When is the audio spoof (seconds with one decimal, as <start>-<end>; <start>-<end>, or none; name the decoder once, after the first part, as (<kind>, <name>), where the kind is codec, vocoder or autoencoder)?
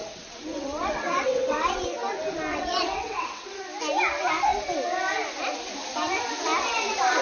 0.0-2.0 (vocoder, WaveNeXt); 2.5-3.6